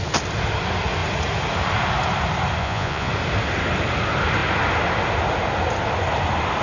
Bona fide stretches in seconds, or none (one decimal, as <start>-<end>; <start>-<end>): 0.0-2.6; 3.1-6.6